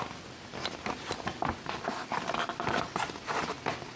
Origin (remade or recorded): recorded